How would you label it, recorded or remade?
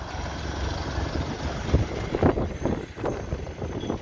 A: recorded